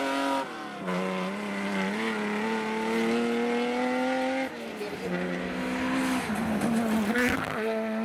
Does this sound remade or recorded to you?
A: recorded